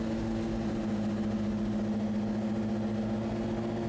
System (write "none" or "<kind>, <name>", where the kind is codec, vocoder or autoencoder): none